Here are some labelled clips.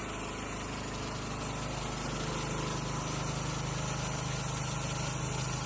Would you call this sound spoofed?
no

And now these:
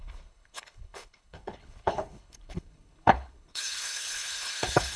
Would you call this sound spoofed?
yes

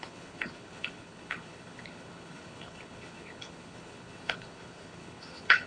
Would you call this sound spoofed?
yes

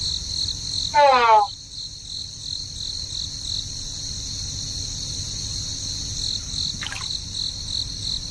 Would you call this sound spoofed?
no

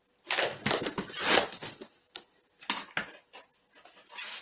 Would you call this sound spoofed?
no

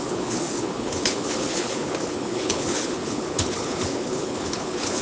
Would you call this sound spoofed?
yes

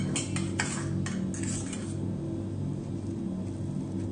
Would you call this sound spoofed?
no